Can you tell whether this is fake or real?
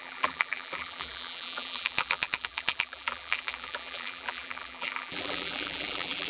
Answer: fake